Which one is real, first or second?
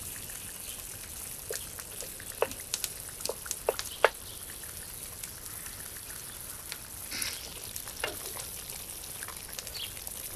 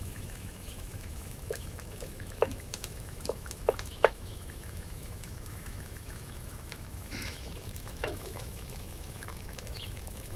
first